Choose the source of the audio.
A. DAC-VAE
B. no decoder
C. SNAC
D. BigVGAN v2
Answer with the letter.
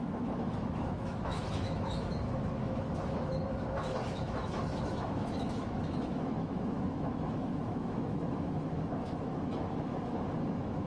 A